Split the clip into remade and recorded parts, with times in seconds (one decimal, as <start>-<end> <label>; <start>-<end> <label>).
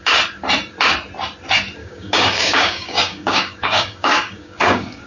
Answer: 0.0-1.8 recorded; 1.8-5.1 remade